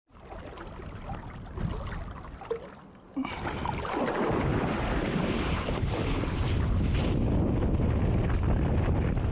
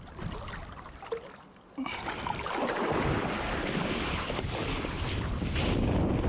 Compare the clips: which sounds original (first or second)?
first